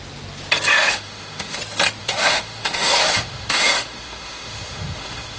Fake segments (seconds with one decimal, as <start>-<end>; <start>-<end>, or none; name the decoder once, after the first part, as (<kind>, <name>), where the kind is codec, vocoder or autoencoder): 0.7-1.6 (autoencoder, DAC-VAE); 2.0-5.4

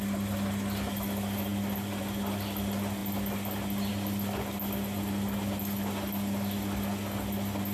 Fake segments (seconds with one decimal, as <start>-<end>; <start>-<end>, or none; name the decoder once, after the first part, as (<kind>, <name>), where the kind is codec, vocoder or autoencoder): none

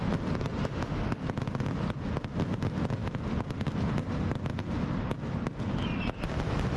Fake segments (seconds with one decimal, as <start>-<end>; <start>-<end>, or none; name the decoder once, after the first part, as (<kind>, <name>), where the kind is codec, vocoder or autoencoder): 0.6-1.2 (autoencoder, DAC-VAE)